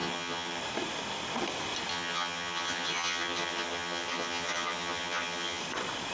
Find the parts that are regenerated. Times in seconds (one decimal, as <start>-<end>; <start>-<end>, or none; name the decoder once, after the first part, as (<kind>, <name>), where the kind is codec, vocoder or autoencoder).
0.0-0.6 (vocoder, HiFi-GAN); 1.9-5.6